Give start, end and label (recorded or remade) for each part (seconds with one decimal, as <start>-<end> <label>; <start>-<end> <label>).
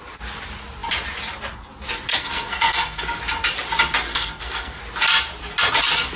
0.0-2.1 recorded; 2.1-3.2 remade; 3.2-4.1 recorded; 4.1-4.8 remade; 4.8-6.2 recorded